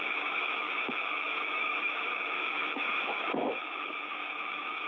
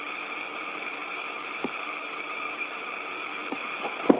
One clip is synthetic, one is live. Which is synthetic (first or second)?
first